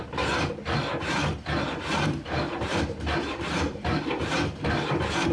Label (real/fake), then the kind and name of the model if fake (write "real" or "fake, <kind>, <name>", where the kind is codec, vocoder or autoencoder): fake, vocoder, BigVGAN v2